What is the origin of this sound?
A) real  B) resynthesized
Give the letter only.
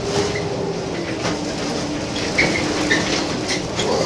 A